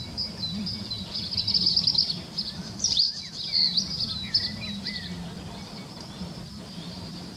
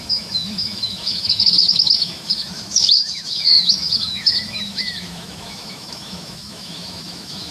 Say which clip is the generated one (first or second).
second